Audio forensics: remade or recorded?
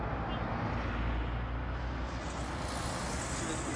recorded